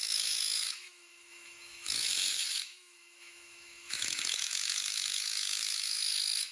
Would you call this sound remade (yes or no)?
yes